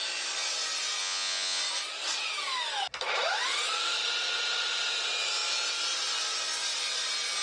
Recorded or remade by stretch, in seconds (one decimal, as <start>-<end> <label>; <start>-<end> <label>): 0.0-1.0 recorded; 1.0-1.6 remade; 1.6-7.4 recorded